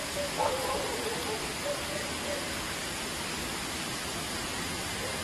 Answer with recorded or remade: recorded